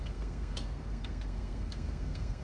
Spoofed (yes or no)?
yes